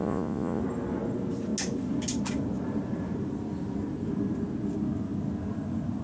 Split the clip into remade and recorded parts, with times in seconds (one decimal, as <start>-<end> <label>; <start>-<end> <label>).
0.0-0.6 remade; 0.6-6.0 recorded